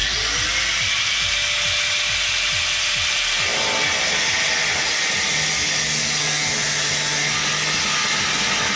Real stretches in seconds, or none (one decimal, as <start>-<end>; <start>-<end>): 0.0-8.8